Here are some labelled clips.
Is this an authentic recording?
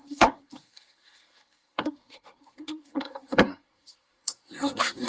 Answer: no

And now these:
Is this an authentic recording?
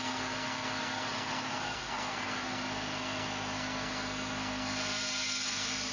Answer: no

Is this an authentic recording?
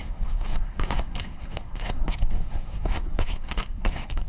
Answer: no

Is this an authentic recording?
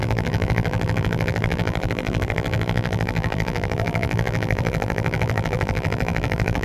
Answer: no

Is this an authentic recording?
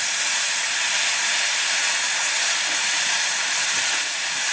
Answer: no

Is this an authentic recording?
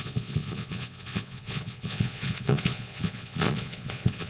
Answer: no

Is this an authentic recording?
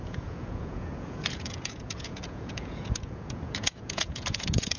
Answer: no